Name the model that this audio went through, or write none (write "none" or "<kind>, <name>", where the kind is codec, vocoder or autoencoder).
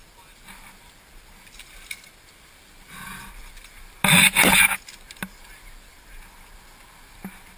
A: none